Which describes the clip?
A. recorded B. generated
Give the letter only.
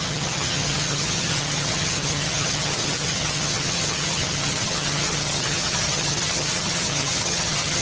B